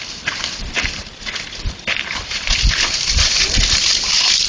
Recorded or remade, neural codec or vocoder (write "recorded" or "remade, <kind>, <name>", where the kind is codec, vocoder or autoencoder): remade, vocoder, BigVGAN v2